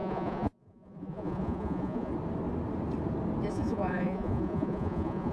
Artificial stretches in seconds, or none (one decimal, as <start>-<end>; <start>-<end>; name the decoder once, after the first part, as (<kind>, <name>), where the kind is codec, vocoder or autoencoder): 0.0-2.1 (vocoder, Vocos); 3.5-5.3